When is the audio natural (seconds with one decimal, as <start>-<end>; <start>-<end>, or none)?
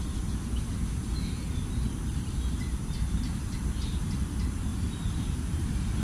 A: 0.0-4.7